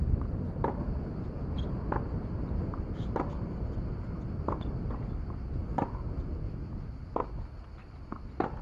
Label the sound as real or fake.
real